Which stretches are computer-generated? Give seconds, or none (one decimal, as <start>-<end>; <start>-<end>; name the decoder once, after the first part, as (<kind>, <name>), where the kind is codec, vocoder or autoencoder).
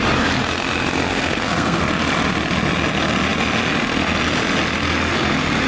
1.1-1.8 (codec, SNAC)